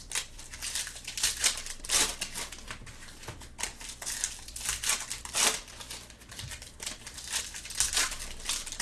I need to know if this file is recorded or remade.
remade